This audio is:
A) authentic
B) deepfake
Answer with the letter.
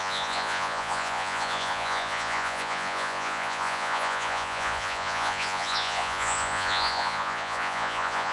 B